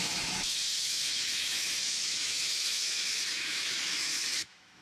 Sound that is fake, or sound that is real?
fake